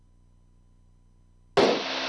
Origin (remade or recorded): recorded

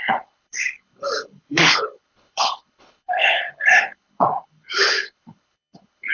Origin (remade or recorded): remade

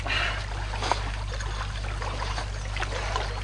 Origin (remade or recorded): recorded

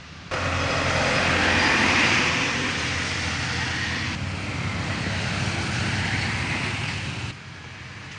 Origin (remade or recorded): recorded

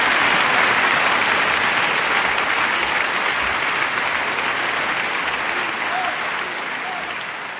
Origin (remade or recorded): recorded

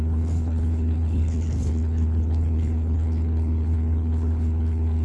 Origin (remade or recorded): remade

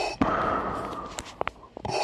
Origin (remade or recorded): recorded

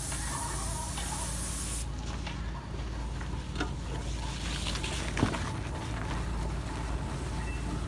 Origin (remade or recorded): recorded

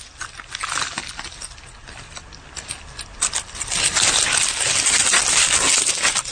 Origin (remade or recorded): recorded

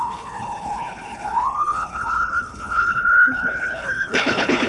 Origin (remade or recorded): remade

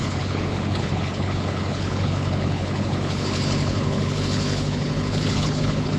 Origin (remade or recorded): remade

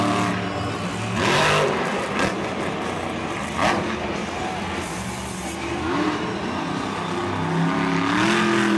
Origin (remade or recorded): recorded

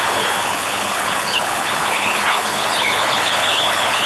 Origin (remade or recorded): remade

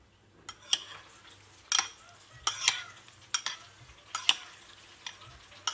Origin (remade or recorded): recorded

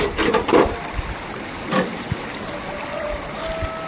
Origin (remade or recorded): recorded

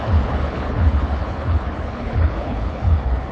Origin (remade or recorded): remade